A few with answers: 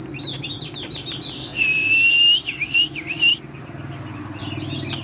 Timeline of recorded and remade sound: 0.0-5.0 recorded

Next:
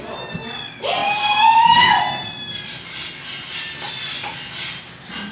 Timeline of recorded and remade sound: 0.0-5.3 recorded

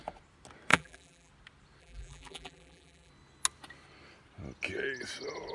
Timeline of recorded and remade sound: 0.0-0.7 recorded; 0.7-1.3 remade; 1.3-1.8 recorded; 1.8-3.1 remade; 3.1-5.5 recorded

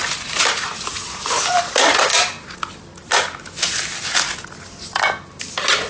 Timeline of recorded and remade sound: 0.0-2.1 remade; 2.1-5.9 recorded